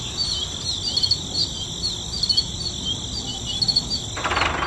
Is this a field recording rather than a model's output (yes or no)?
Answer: yes